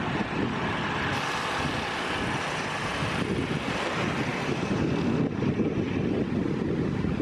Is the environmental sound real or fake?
real